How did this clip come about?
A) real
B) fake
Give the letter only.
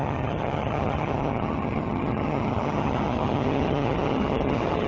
B